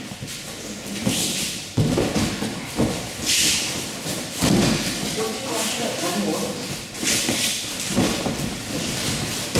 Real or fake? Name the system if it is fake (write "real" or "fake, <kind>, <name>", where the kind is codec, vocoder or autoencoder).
real